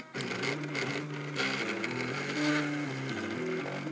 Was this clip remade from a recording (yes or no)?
no